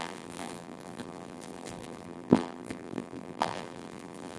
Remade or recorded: remade